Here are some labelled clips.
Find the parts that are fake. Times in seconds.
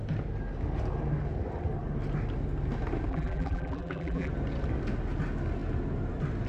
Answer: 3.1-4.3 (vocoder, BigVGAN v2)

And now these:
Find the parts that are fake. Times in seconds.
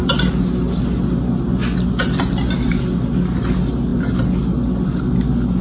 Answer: none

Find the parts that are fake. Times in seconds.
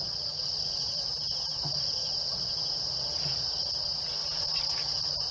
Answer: 0.5-1.8 (vocoder, BigVGAN v2); 4.2-5.3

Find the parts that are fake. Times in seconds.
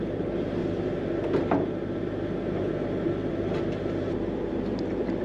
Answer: 0.0-0.6 (vocoder, BigVGAN v2); 3.3-5.2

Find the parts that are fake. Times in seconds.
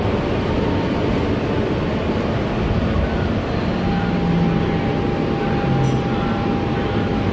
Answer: none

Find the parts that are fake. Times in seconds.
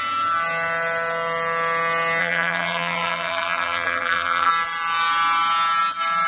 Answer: 2.2-4.5 (vocoder, BigVGAN v2)